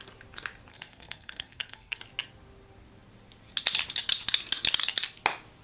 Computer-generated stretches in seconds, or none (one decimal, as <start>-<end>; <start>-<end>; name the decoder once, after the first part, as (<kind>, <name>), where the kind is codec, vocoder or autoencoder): 0.7-2.0 (codec, SNAC)